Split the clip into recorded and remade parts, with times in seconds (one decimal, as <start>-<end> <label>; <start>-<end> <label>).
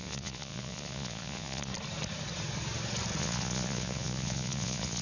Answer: 0.0-1.7 remade; 1.7-3.2 recorded; 3.2-5.0 remade